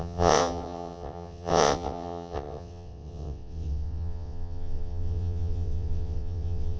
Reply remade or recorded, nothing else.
remade